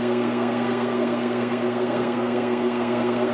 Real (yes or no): no